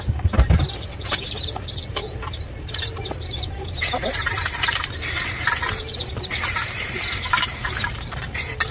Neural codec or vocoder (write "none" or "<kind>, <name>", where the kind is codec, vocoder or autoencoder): vocoder, BigVGAN v2